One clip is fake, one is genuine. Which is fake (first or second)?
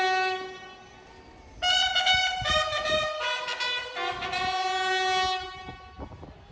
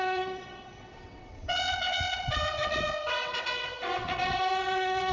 second